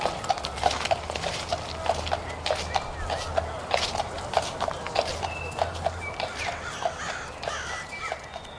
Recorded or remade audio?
recorded